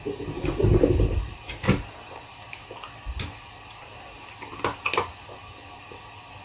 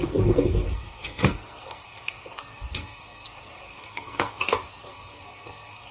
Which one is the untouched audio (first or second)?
first